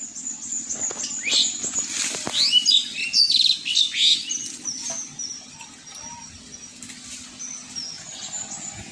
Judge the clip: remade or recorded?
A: recorded